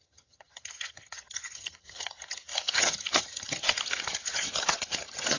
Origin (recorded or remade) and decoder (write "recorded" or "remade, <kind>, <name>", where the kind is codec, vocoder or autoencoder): remade, vocoder, HiFi-GAN